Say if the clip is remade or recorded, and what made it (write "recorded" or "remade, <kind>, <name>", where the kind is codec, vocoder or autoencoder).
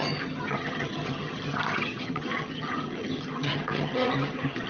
remade, vocoder, HiFi-GAN